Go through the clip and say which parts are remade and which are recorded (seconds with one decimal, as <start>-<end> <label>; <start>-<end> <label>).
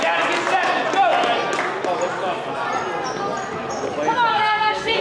0.0-4.3 recorded; 4.3-5.0 remade